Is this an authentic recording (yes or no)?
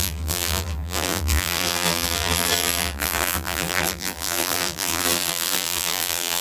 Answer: no